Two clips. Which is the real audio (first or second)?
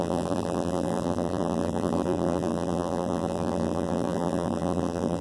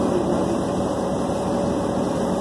second